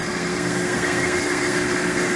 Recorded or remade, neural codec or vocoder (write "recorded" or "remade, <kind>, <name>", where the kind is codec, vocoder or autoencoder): remade, codec, SNAC